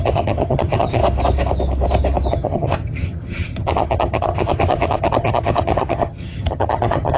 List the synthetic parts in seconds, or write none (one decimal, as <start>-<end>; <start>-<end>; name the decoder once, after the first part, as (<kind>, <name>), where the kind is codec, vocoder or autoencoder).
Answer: 0.0-1.0 (vocoder, HiFi-GAN); 2.3-7.2